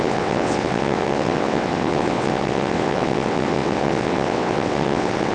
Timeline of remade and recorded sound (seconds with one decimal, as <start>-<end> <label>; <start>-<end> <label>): 0.0-5.3 remade